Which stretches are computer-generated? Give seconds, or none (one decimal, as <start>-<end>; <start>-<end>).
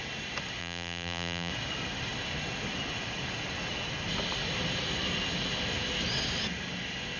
0.6-1.5